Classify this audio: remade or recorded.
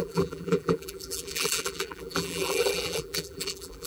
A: remade